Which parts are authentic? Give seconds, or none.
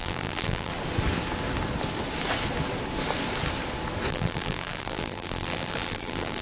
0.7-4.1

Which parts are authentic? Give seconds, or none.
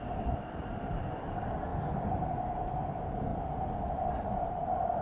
1.7-2.7; 3.3-4.4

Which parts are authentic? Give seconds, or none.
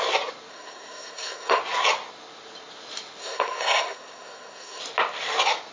0.0-0.5; 1.6-3.2; 4.8-5.7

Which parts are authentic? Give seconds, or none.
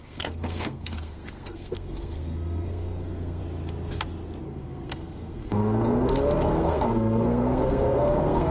3.4-4.4